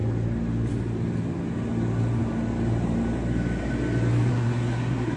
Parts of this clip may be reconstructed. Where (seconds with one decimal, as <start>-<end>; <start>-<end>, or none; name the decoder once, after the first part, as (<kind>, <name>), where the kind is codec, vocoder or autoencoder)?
4.3-5.2 (codec, SNAC)